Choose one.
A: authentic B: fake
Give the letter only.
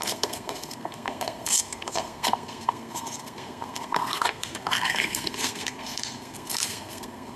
B